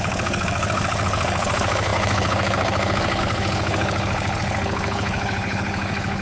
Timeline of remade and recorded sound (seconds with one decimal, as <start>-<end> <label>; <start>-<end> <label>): 0.0-6.2 remade